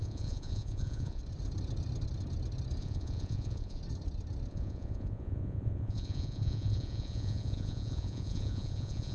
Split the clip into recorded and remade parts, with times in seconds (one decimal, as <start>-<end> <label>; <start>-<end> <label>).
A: 0.0-1.2 remade; 1.2-2.8 recorded; 2.8-3.8 remade; 3.8-4.5 recorded; 4.5-9.1 remade